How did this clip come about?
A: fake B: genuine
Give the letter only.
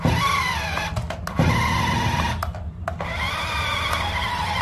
B